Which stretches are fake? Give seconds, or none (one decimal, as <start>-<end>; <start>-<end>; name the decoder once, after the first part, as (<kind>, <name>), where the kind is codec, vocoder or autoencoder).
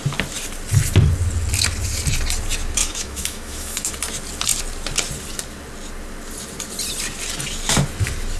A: 2.8-3.9 (autoencoder, DAC-VAE)